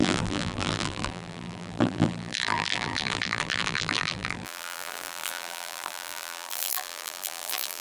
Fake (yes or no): yes